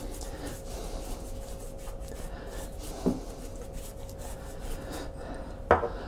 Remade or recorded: recorded